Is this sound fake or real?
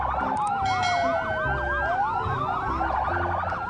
real